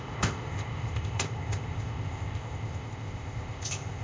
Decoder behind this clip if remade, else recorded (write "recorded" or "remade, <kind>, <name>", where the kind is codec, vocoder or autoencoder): remade, codec, ZipCodec